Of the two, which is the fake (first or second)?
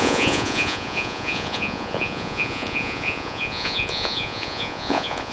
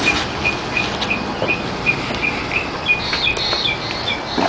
first